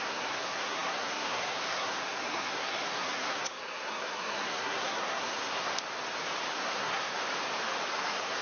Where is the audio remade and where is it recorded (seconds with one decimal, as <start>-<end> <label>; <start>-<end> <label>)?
0.0-5.7 remade; 5.7-6.5 recorded; 6.5-7.2 remade; 7.2-7.9 recorded; 7.9-8.4 remade